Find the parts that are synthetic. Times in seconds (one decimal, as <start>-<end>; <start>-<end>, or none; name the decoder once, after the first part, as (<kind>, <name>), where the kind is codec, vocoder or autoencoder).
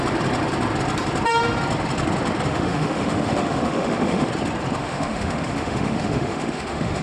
2.5-4.3 (autoencoder, DAC-VAE); 4.8-7.0